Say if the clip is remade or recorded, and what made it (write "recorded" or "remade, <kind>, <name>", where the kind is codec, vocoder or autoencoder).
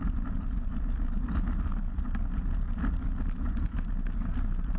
recorded